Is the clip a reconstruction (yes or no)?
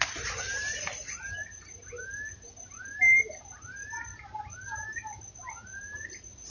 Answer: no